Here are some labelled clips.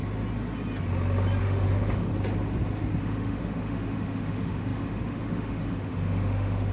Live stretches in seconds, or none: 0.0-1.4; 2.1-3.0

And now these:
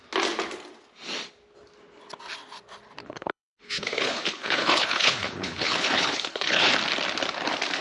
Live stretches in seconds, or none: 0.0-3.0; 6.7-7.8

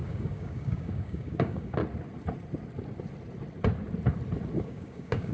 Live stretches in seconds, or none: 1.8-4.6

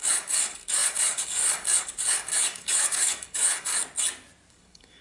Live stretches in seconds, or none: 3.7-4.5

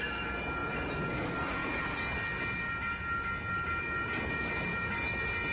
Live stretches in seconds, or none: 0.0-5.5

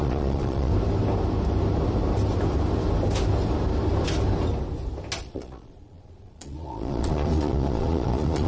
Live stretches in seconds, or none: 0.7-5.2

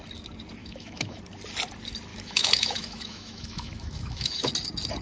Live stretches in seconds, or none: 0.0-0.6; 1.2-2.1; 4.5-5.0